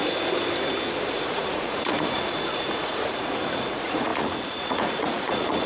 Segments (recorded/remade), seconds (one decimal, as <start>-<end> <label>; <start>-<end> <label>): 0.0-1.1 recorded; 1.1-5.7 remade